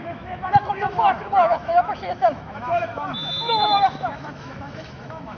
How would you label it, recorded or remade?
remade